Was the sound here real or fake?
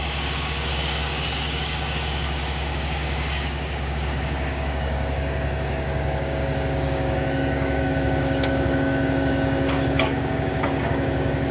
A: fake